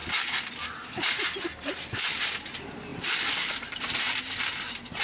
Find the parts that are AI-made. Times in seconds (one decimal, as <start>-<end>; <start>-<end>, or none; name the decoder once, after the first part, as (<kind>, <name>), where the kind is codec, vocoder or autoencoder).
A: 2.9-4.6 (vocoder, BigVGAN v2)